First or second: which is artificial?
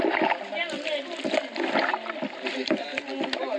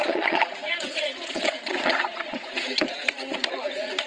second